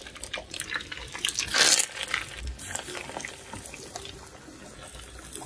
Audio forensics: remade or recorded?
recorded